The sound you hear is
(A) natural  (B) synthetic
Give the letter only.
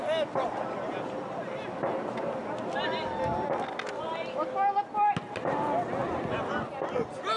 A